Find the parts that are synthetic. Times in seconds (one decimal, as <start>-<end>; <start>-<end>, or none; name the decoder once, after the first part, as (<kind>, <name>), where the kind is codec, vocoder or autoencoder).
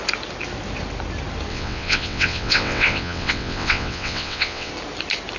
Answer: 1.5-4.7 (vocoder, WaveNeXt)